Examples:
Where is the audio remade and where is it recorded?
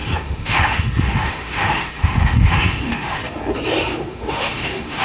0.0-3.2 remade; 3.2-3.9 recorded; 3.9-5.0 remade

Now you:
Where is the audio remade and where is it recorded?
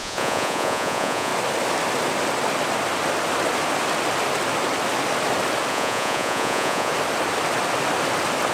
0.0-1.3 remade; 1.3-5.7 recorded; 5.7-6.9 remade; 6.9-8.5 recorded